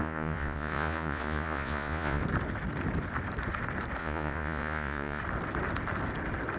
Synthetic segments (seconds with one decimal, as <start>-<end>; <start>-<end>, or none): 0.0-2.2; 4.0-5.2